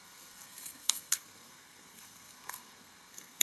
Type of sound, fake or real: fake